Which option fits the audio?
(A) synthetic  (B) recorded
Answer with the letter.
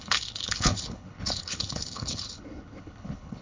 A